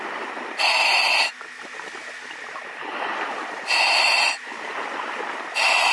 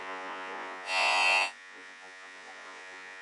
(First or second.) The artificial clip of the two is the second